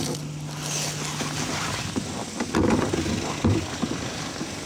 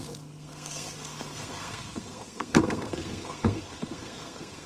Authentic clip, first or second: first